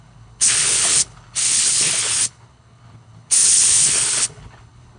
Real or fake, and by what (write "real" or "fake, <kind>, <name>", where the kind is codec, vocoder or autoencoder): fake, codec, HILCodec